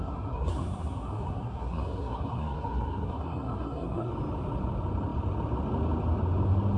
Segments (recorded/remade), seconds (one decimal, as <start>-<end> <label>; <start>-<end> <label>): 0.0-4.1 remade; 4.1-6.8 recorded